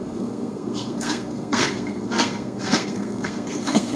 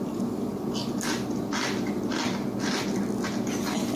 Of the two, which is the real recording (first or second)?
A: second